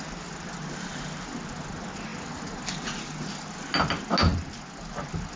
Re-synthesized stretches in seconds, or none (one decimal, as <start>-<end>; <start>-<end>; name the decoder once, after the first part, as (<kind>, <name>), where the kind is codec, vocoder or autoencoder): none